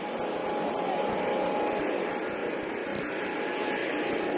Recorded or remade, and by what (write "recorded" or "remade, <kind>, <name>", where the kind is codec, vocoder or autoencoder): recorded